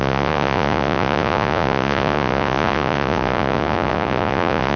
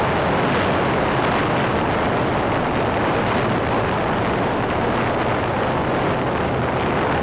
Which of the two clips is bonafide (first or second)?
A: second